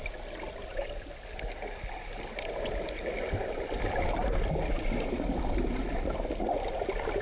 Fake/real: real